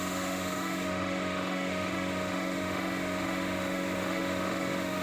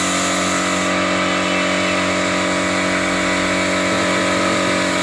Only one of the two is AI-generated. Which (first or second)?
first